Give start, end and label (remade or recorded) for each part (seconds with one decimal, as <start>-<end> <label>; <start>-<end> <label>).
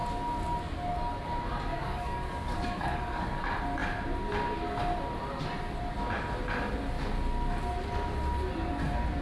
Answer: 0.0-1.7 recorded; 1.7-3.4 remade; 3.4-9.2 recorded